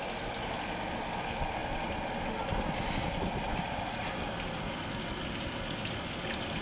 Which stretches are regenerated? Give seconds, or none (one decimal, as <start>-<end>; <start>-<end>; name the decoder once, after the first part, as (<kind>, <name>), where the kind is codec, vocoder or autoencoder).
none